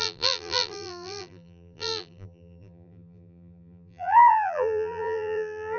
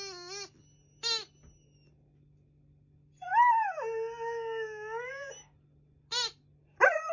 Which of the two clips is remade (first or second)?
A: first